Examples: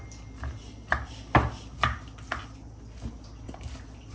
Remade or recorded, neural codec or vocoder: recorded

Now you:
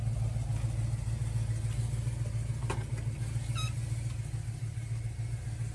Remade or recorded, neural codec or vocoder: recorded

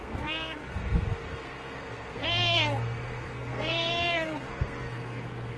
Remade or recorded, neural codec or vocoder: remade, codec, SNAC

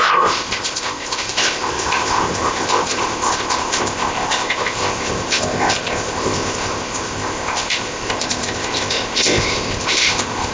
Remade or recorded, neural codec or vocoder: remade, codec, ZipCodec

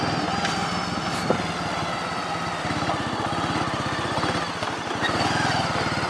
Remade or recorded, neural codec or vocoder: recorded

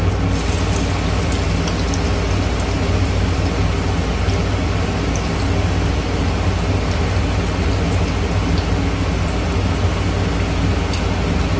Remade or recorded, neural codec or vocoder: recorded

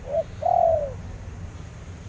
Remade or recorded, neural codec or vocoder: remade, vocoder, BigVGAN v2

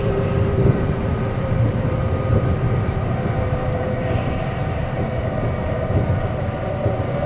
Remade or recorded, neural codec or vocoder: remade, vocoder, BigVGAN v2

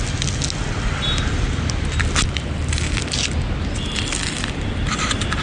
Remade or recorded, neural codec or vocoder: recorded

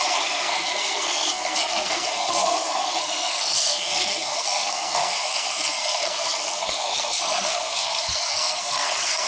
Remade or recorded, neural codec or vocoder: remade, codec, SNAC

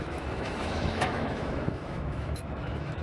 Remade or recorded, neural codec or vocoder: remade, autoencoder, DAC-VAE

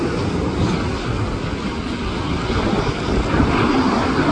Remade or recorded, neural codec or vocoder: recorded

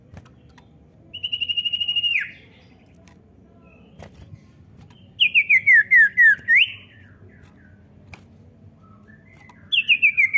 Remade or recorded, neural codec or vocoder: recorded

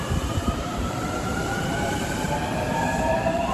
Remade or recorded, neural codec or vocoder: remade, vocoder, BigVGAN v2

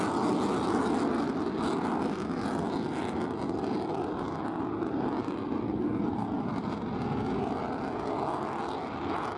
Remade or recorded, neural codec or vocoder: recorded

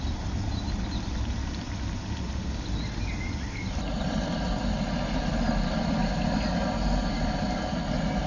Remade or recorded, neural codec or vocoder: recorded